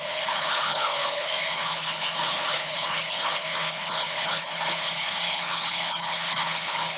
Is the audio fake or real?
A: fake